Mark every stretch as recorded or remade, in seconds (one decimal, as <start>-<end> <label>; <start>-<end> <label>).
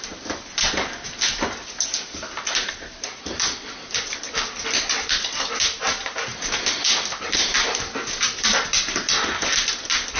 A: 0.0-10.2 recorded